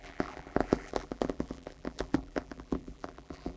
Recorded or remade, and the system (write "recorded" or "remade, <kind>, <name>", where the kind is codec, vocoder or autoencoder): remade, vocoder, BigVGAN v2